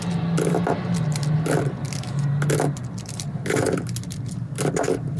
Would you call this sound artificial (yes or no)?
no